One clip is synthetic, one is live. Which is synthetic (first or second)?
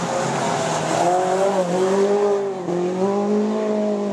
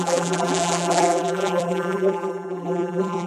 second